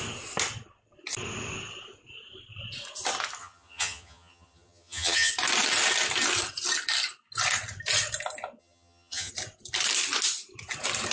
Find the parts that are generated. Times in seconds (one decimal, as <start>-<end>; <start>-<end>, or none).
3.4-5.3; 8.6-9.3